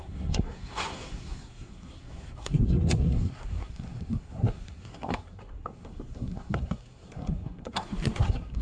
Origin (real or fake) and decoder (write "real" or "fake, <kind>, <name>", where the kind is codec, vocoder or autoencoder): fake, codec, SNAC